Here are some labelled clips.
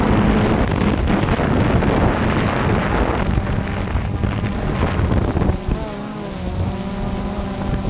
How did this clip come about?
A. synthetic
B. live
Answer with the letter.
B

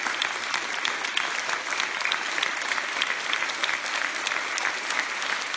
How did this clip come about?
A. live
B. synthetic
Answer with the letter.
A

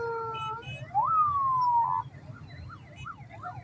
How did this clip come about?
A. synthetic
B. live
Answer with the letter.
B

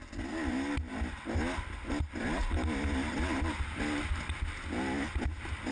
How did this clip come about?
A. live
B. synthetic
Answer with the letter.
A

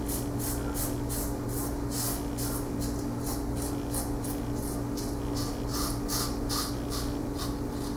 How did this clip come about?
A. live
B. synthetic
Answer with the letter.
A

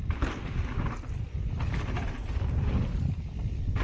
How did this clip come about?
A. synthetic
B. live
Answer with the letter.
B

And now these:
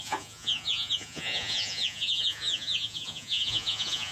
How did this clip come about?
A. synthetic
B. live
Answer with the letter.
A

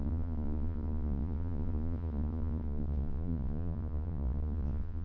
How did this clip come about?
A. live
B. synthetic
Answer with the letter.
B